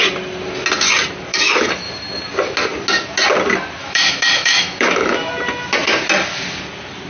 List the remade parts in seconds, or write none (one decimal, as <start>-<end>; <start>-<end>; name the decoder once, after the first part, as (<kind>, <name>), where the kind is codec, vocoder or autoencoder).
1.3-1.9 (autoencoder, DAC-VAE); 3.8-5.3